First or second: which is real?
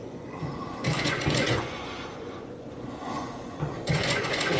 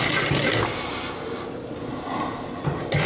second